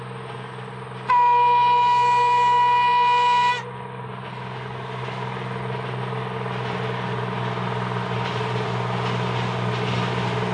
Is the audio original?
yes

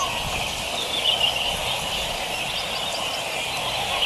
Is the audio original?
yes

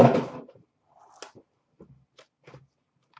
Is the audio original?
yes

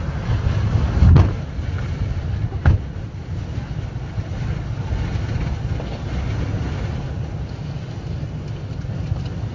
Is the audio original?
yes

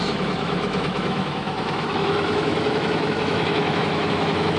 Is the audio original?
no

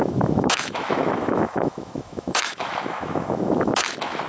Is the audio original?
no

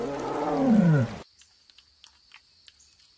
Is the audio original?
yes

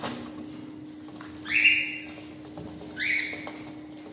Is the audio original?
yes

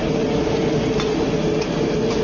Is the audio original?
yes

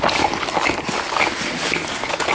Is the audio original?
yes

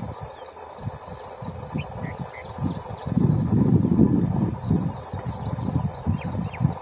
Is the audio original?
yes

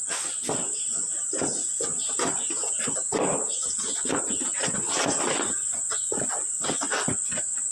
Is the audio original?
yes